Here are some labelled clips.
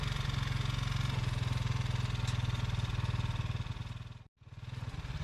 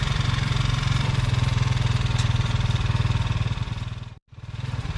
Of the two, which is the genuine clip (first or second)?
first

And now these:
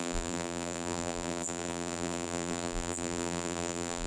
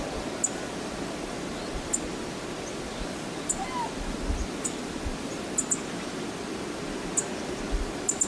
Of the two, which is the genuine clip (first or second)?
second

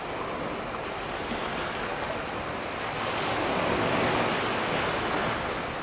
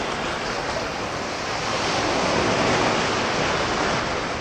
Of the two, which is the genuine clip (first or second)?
first